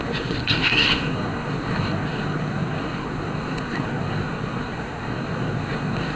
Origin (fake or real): fake